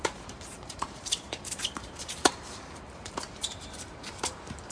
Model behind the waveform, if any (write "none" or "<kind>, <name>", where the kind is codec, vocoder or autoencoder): vocoder, BigVGAN v2